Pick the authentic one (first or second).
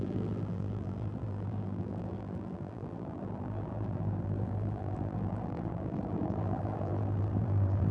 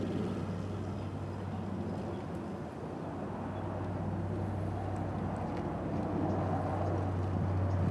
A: second